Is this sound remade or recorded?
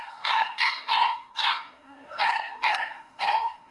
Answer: remade